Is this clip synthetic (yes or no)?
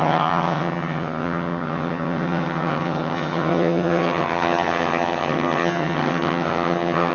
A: yes